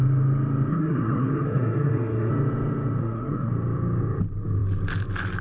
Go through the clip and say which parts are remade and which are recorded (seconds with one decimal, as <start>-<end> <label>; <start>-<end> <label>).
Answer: 0.0-0.7 recorded; 0.7-2.3 remade; 2.3-3.0 recorded; 3.0-3.5 remade; 3.5-5.4 recorded